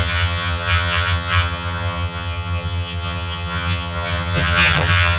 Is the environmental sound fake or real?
fake